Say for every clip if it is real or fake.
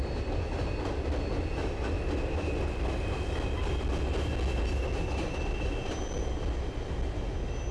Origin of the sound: real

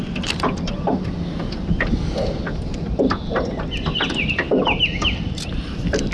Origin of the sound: real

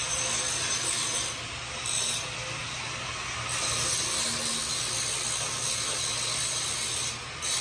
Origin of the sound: real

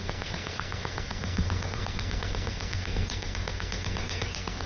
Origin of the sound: fake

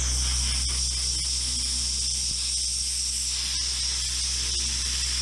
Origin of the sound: real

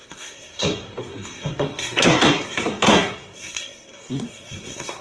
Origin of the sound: fake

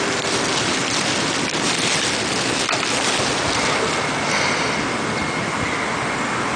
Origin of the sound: real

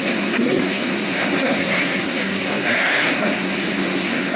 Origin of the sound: fake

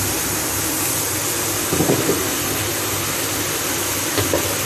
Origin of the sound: real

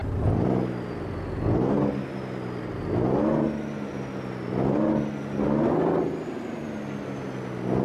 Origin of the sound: real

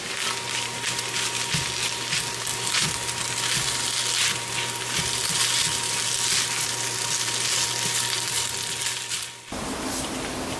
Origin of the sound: real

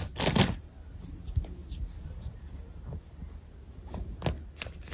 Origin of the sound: real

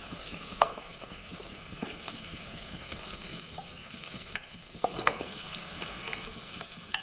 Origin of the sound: fake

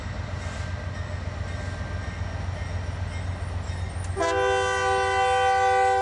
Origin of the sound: real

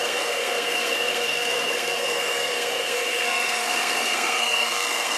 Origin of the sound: fake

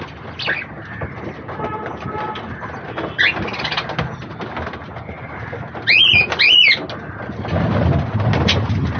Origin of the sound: real